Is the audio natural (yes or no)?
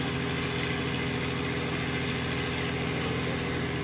yes